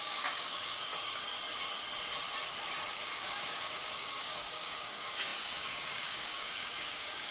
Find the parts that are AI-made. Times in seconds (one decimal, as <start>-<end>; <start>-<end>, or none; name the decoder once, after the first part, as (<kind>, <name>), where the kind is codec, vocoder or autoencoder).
0.0-0.9 (codec, DAC); 2.9-7.3